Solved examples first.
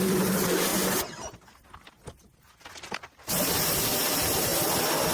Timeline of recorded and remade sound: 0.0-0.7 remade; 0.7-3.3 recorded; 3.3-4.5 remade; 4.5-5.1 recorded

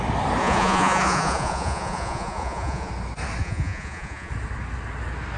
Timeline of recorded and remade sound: 0.0-0.4 recorded; 0.4-2.9 remade; 2.9-3.4 recorded; 3.4-4.3 remade; 4.3-5.4 recorded

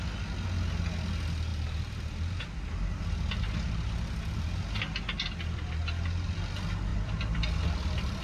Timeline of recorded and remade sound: 0.0-1.5 recorded; 1.5-2.4 remade; 2.4-6.9 recorded; 6.9-8.2 remade

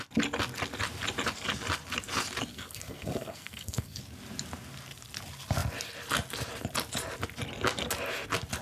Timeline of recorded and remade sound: 0.0-2.5 recorded; 2.5-4.0 remade; 4.0-8.6 recorded

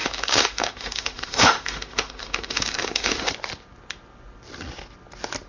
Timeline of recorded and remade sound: 0.0-3.3 remade; 3.3-5.5 recorded